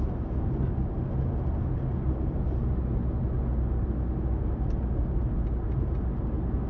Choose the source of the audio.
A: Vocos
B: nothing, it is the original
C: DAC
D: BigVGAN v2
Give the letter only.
B